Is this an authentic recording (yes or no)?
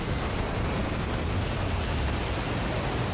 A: yes